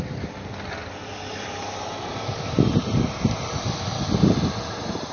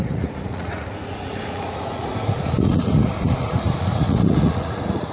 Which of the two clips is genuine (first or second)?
first